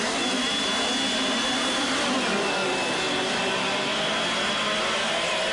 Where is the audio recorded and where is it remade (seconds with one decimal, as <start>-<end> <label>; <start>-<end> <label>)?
0.0-5.5 recorded